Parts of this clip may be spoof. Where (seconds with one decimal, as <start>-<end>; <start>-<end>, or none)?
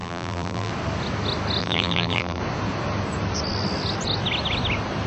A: 0.0-0.7; 1.6-2.4